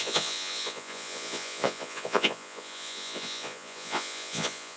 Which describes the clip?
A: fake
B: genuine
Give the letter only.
A